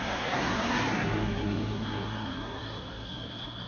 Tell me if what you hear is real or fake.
fake